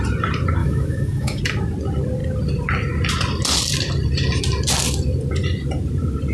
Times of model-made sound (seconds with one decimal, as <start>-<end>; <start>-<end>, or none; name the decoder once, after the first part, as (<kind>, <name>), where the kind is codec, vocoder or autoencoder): 0.6-1.4 (autoencoder, DAC-VAE)